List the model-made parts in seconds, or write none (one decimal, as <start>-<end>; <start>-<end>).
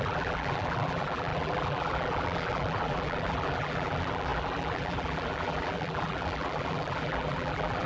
0.0-7.9